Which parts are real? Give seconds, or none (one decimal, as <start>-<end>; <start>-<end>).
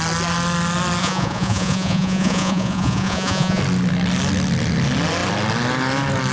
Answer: 0.0-1.0; 3.6-6.3